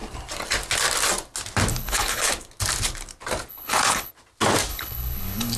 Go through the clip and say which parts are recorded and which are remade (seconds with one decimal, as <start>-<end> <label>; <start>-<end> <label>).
0.0-1.7 recorded; 1.7-2.3 remade; 2.3-3.5 recorded; 3.5-4.1 remade; 4.1-4.7 recorded; 4.7-5.6 remade

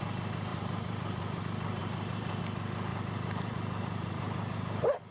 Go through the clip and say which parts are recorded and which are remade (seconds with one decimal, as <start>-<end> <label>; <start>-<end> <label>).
0.0-0.5 recorded; 0.5-1.4 remade; 1.4-1.8 recorded; 1.8-2.4 remade; 2.4-2.9 recorded; 2.9-5.1 remade

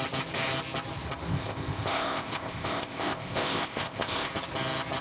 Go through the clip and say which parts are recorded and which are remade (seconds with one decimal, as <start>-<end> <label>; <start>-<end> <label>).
0.0-1.3 recorded; 1.3-4.3 remade; 4.3-5.0 recorded